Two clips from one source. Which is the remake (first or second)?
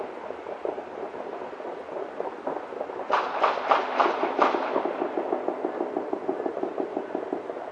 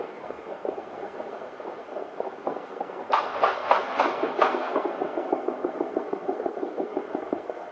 second